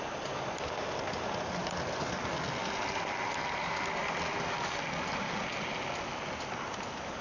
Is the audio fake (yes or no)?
no